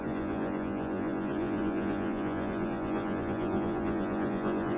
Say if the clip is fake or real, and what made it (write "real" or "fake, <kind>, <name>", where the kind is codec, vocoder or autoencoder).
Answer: fake, vocoder, Vocos